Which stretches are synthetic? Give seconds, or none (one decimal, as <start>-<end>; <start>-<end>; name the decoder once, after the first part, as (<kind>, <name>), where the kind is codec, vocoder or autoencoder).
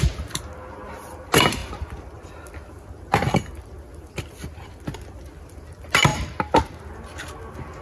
none